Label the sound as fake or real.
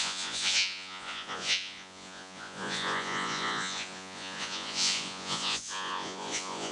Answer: fake